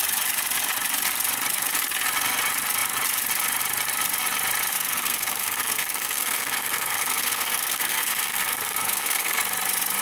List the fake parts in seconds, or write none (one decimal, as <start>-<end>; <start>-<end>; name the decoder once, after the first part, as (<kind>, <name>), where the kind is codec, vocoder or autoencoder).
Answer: 4.7-9.4 (codec, SNAC)